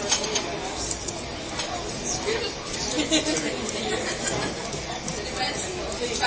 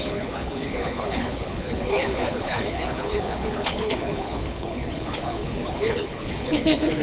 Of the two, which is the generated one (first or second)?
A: second